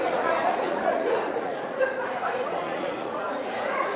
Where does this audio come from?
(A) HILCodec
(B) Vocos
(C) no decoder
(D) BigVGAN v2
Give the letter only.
B